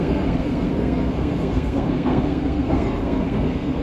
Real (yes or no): no